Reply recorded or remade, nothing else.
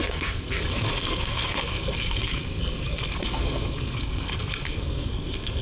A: remade